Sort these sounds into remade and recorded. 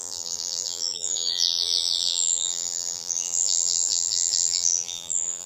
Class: remade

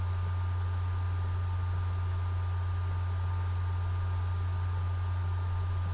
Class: recorded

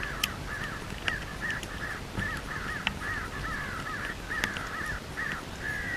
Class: recorded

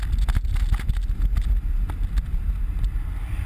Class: recorded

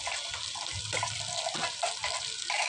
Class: remade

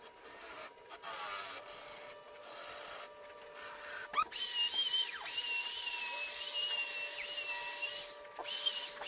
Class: recorded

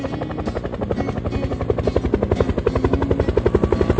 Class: recorded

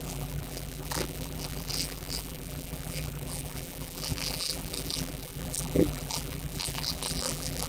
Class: remade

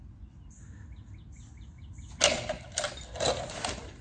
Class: recorded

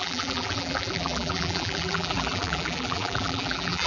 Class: remade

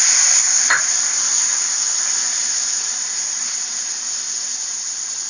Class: recorded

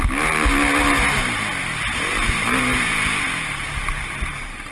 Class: recorded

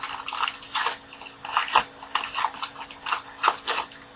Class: recorded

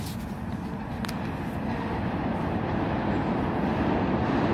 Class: recorded